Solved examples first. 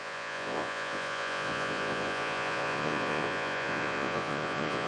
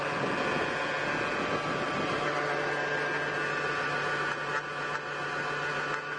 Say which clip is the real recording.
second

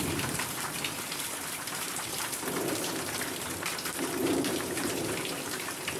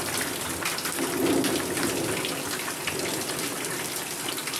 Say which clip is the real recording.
second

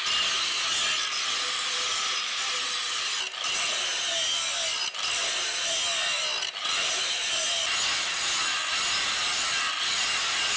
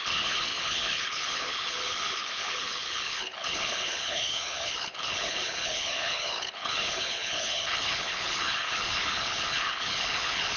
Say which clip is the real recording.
first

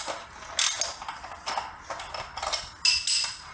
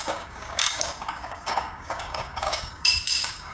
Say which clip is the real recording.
first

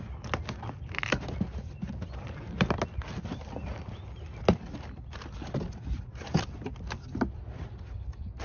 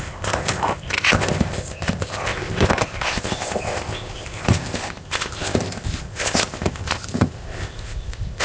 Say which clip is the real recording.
first